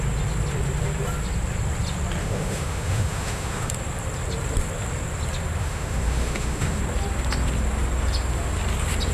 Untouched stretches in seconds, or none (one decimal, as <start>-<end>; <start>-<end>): 0.0-2.2; 3.7-5.6; 6.8-9.1